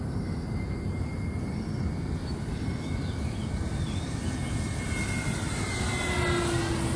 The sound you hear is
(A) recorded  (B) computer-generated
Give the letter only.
A